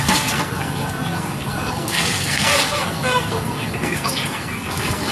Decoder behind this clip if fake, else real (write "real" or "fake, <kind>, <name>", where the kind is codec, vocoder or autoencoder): fake, codec, SNAC